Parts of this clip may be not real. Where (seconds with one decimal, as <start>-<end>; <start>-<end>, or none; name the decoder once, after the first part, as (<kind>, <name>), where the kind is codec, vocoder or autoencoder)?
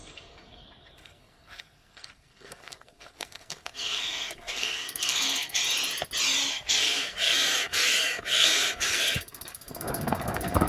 0.0-5.6 (codec, SNAC); 6.5-10.7